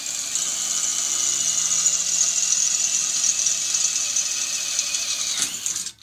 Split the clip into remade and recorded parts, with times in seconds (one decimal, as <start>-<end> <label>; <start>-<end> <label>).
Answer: 0.0-6.0 recorded